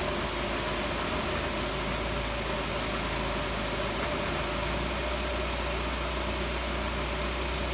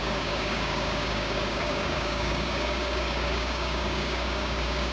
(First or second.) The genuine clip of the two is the first